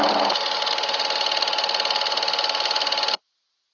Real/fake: real